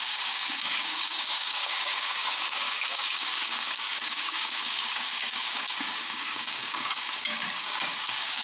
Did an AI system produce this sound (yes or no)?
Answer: yes